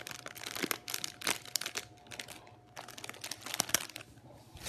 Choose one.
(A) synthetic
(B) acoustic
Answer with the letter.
B